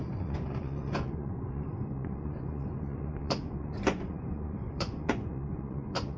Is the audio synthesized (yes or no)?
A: yes